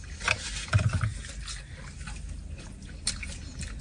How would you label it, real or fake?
real